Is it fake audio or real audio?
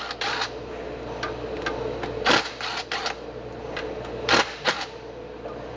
real